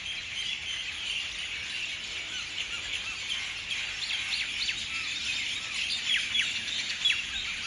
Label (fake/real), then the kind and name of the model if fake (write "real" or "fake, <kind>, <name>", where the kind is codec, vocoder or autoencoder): real